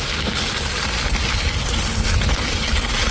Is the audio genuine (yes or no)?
yes